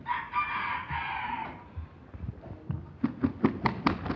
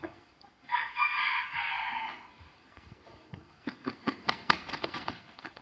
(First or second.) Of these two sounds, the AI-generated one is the second